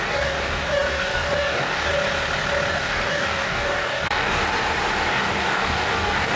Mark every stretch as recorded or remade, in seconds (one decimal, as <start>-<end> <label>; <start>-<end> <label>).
0.0-1.9 remade; 1.9-2.7 recorded; 2.7-4.4 remade; 4.4-5.1 recorded; 5.1-6.4 remade